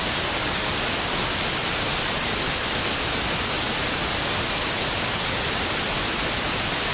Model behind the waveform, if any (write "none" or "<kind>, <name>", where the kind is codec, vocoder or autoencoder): none